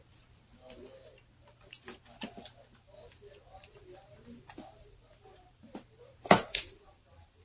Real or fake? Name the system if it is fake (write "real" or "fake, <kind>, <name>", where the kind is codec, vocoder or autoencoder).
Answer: real